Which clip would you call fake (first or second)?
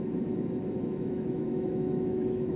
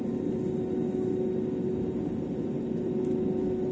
first